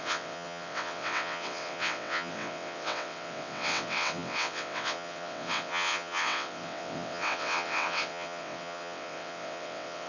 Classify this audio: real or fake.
fake